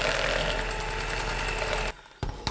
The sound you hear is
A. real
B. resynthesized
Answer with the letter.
A